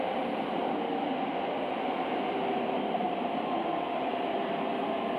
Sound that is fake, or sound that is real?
fake